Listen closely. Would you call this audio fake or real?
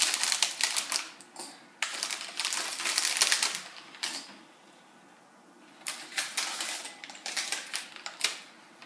real